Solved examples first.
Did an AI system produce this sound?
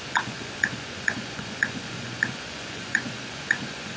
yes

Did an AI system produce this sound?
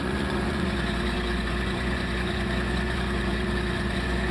yes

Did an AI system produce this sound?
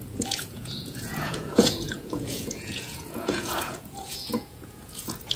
yes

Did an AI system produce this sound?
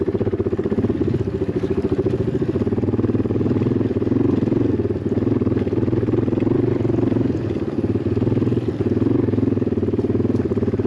no